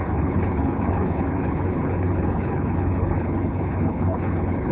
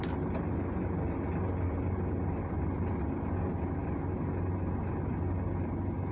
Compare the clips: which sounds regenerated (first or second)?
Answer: first